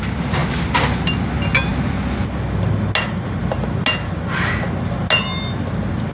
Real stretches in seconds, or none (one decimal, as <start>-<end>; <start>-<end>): 0.0-6.1